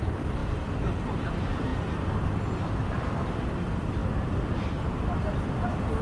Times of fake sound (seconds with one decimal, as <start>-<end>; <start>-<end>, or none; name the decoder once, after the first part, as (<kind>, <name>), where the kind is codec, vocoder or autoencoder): 0.0-1.7 (vocoder, BigVGAN v2); 3.5-4.0